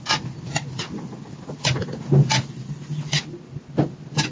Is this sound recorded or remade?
recorded